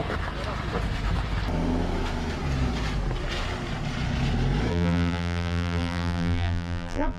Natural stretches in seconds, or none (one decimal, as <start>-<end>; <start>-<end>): 0.0-4.7